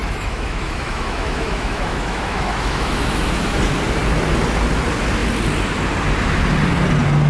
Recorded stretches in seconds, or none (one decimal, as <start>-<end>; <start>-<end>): 3.6-7.3